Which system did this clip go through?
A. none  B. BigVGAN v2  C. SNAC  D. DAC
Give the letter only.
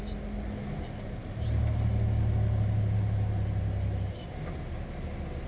A